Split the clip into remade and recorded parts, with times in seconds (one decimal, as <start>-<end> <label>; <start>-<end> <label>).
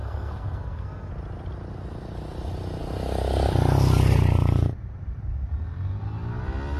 0.0-1.1 remade; 1.1-6.8 recorded